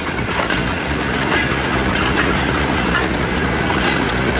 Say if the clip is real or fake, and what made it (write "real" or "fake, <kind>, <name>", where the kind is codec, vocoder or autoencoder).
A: fake, vocoder, Vocos